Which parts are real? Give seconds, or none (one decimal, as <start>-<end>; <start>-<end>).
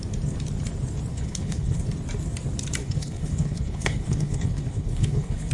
0.0-1.1; 1.8-2.8